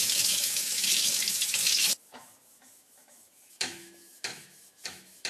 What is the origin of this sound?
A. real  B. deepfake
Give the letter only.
B